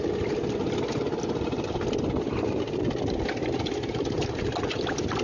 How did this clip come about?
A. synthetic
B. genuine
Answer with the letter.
B